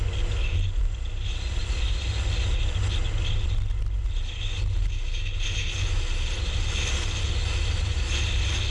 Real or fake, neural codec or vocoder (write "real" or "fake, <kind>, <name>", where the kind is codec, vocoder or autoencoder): real